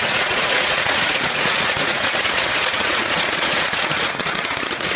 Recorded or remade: remade